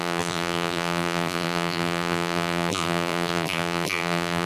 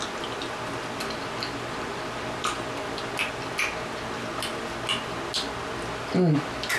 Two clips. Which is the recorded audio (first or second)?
second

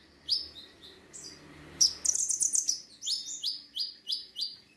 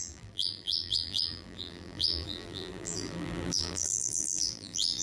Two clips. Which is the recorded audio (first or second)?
first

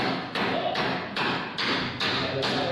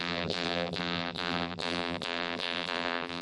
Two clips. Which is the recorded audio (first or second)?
first